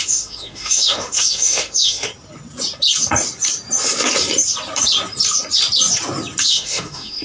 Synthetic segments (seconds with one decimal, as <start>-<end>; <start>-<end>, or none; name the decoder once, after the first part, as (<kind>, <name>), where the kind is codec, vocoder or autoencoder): 0.0-2.1 (autoencoder, DAC-VAE); 6.4-7.2